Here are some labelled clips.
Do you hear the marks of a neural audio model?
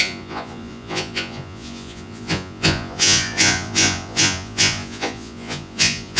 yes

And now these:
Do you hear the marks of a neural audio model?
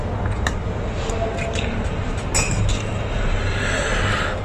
no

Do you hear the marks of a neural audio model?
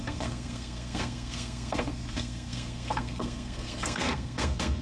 yes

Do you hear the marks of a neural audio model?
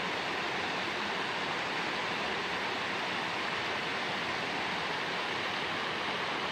no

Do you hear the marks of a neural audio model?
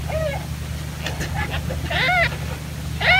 no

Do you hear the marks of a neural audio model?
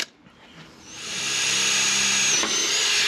no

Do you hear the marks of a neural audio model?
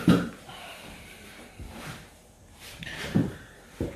yes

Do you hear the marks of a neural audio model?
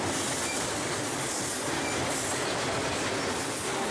no